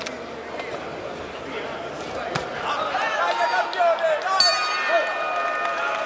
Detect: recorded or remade recorded